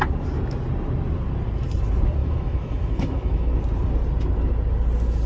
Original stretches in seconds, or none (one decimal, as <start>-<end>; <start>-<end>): 0.0-2.2; 3.6-5.3